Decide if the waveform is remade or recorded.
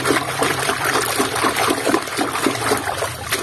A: remade